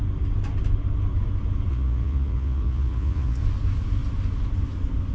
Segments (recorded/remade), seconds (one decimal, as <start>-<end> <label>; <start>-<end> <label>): 0.0-1.7 recorded; 1.7-3.4 remade; 3.4-5.1 recorded